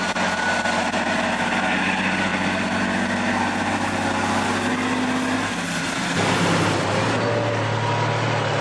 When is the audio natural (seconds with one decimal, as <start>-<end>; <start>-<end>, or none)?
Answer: 0.0-8.6